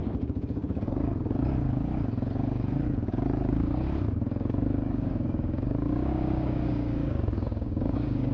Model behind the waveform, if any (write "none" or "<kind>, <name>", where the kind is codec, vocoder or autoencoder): codec, DAC